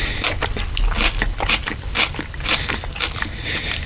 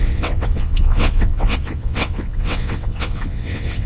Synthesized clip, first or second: second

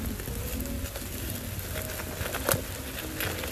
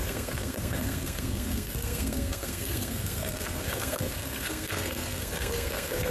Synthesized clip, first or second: second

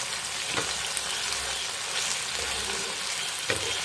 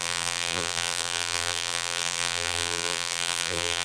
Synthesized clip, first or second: second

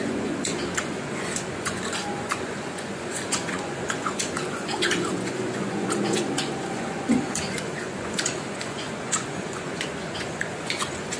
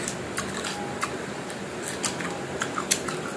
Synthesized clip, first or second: first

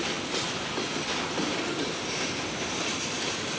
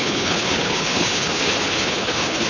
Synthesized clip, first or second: second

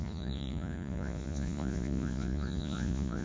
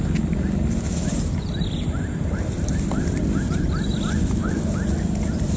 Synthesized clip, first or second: first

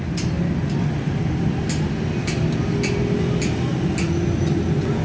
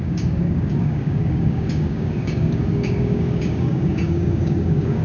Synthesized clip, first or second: second